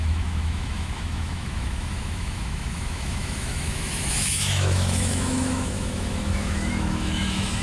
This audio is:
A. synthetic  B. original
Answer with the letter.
A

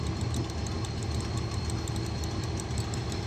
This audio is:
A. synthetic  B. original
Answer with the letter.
B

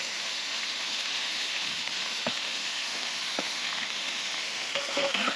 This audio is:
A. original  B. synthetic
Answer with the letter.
B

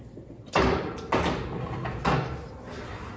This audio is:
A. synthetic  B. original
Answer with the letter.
B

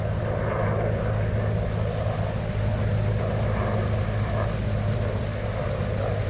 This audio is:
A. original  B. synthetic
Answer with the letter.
A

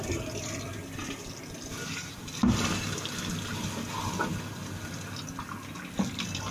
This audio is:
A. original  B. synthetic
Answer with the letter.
A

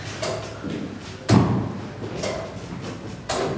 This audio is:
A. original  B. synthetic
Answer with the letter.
A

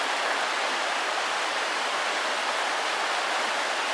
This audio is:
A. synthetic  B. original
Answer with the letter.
B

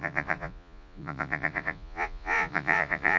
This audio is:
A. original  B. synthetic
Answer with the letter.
B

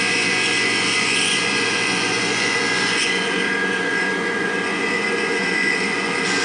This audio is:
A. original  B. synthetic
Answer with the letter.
B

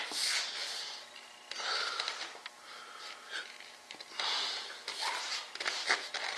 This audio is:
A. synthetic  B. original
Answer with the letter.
B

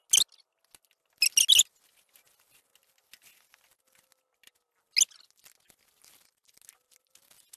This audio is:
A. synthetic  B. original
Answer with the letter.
B